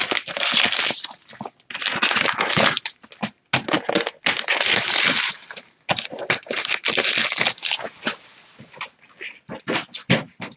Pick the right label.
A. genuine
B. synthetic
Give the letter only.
A